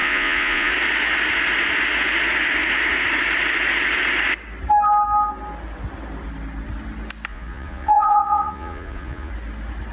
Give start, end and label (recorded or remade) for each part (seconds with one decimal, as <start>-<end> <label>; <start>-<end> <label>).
0.0-0.7 remade; 0.7-7.3 recorded; 7.3-9.3 remade; 9.3-9.9 recorded